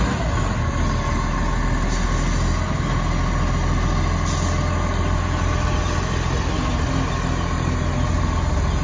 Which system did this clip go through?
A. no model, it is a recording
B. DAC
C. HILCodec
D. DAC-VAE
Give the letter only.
A